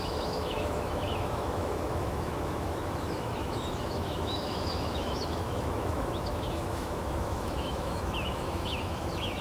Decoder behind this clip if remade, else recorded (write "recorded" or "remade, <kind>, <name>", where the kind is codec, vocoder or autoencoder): remade, autoencoder, DAC-VAE